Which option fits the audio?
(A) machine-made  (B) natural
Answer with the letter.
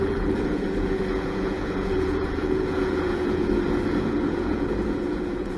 A